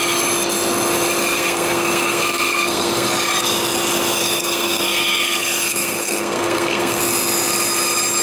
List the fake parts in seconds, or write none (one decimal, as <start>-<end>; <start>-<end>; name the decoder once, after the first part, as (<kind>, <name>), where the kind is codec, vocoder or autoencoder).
1.2-3.1 (codec, SNAC); 4.2-7.0